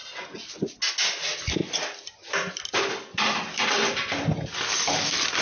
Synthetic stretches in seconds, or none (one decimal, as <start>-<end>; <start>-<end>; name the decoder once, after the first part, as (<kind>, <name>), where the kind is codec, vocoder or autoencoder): 1.6-3.4 (vocoder, BigVGAN v2)